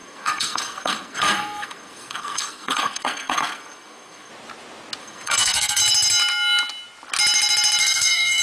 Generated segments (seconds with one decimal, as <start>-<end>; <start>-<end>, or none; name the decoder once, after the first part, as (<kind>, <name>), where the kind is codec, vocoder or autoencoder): 0.0-4.3 (codec, SNAC); 5.0-5.8; 7.8-8.4